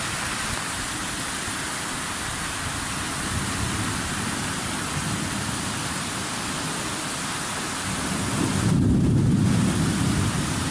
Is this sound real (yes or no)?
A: no